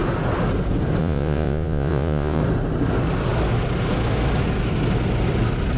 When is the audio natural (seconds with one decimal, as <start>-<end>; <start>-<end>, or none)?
0.0-1.0; 2.4-5.8